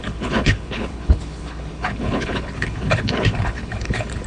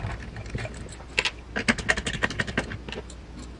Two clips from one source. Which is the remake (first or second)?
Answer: first